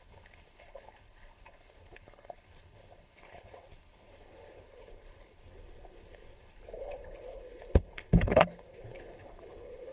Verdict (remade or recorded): remade